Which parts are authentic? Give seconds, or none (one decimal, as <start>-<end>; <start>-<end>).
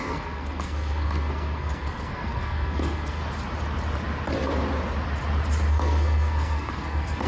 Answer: 3.2-5.7